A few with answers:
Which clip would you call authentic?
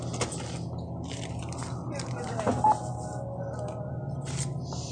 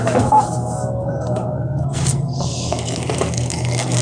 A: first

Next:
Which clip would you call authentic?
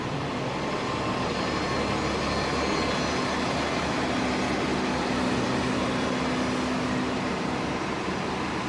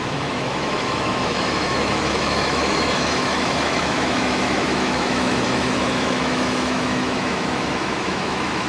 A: first